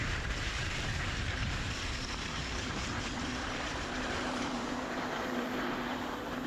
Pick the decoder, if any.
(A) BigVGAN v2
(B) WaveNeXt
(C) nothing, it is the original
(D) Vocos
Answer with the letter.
A